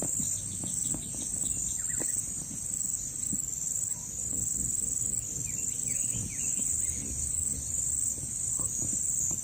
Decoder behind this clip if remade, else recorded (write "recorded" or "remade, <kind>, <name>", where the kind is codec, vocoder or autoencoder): recorded